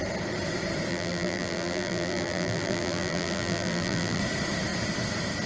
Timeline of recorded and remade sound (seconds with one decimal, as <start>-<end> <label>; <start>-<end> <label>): 0.0-0.9 recorded; 0.9-4.2 remade; 4.2-5.5 recorded